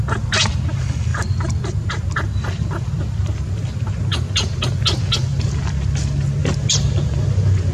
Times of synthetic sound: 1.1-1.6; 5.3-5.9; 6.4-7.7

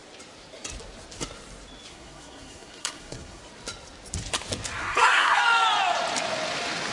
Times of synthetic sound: 1.9-3.4; 4.8-5.4

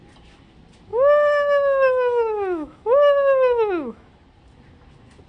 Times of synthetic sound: 0.9-4.1

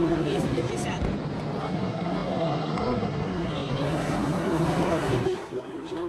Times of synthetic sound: 0.0-0.7; 1.6-6.1